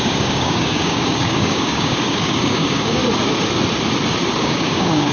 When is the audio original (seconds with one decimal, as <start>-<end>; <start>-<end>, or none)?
3.0-4.4

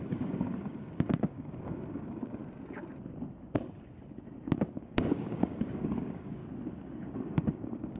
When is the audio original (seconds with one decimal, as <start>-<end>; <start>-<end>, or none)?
2.4-4.7; 6.4-7.0

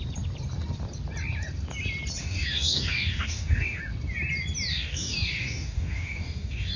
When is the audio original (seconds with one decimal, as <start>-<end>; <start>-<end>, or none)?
0.0-2.2; 3.8-4.7

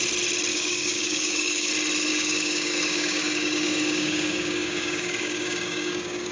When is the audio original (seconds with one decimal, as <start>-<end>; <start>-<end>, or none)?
0.0-0.5; 1.7-2.1

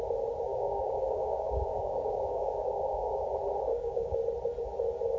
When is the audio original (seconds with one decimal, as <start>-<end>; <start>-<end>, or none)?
0.0-0.5; 3.3-3.7; 4.2-5.2

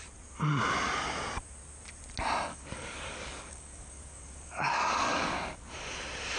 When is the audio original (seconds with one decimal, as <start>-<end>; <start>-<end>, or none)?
0.0-2.5; 5.9-6.4